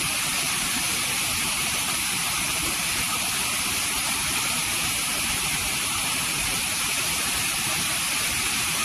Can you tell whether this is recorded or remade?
remade